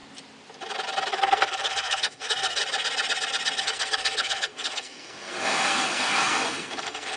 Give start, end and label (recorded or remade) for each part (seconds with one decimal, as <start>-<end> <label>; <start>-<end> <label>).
0.0-1.1 recorded; 1.1-2.6 remade; 2.6-3.6 recorded; 3.6-7.2 remade